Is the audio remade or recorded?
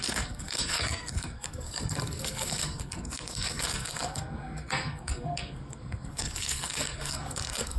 remade